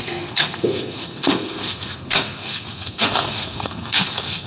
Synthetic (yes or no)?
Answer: yes